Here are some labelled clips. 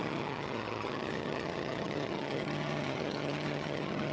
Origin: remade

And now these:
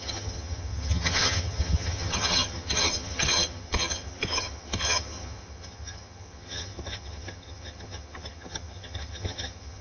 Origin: remade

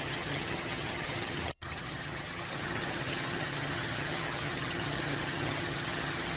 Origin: remade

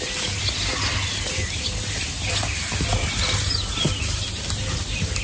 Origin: recorded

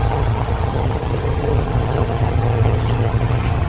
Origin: remade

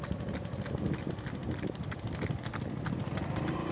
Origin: recorded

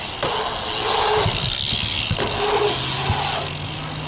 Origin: recorded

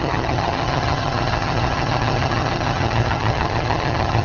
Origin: remade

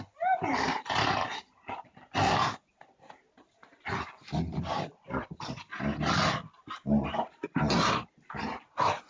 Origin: recorded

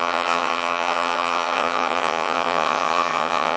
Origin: remade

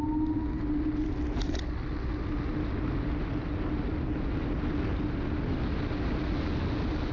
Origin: recorded